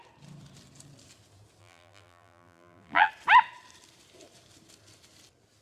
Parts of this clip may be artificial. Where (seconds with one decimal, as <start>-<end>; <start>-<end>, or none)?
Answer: 1.6-3.1